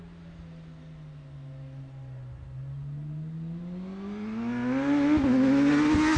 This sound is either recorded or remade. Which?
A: recorded